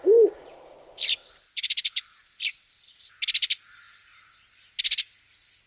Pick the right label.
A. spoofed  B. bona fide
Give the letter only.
B